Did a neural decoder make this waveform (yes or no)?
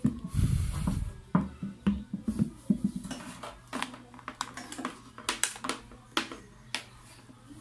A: no